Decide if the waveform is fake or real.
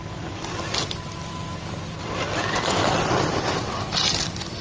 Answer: real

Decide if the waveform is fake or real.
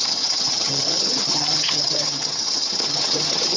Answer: fake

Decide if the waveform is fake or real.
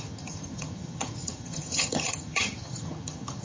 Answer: fake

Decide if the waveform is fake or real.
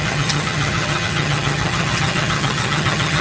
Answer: fake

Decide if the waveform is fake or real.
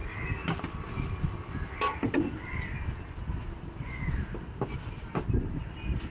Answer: real